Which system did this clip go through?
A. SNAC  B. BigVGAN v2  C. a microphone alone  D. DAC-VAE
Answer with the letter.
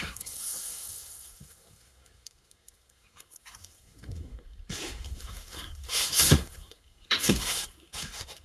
A